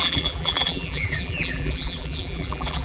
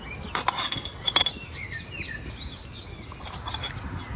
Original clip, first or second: second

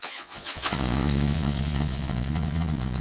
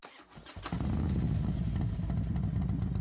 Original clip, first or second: second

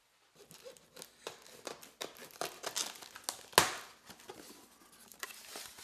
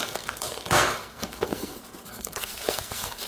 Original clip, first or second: first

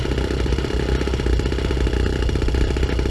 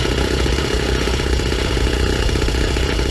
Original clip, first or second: first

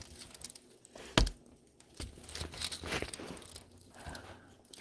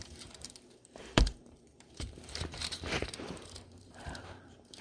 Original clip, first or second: first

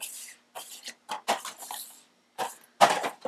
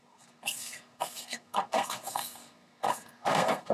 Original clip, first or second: first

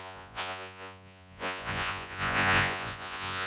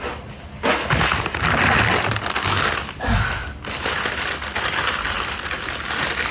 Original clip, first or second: second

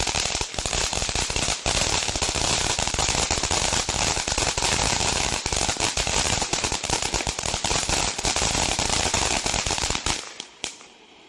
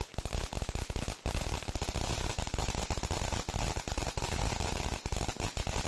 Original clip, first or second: second